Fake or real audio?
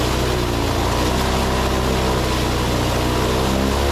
real